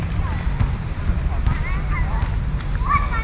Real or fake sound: real